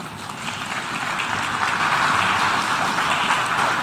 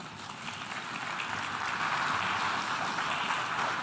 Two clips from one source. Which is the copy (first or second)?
second